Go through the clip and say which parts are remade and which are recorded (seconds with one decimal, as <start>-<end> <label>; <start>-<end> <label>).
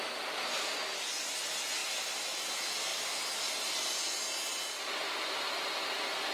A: 0.0-2.9 recorded; 2.9-3.5 remade; 3.5-4.5 recorded; 4.5-5.6 remade; 5.6-6.3 recorded